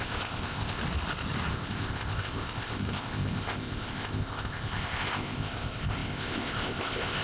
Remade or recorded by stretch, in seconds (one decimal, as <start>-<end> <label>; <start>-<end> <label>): 0.0-0.8 remade; 0.8-1.5 recorded; 1.5-7.2 remade